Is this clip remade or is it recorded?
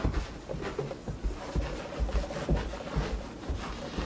recorded